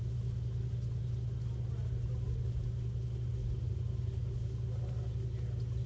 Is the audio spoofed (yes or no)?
no